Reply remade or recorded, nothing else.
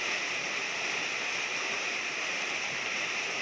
remade